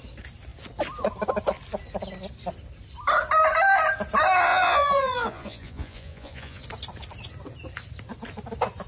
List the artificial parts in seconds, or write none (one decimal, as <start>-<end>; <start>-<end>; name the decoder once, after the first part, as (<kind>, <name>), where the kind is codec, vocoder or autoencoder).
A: 4.5-6.6 (vocoder, Vocos)